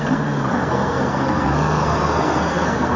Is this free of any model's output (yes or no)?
no